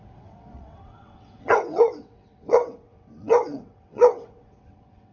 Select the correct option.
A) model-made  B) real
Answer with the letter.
A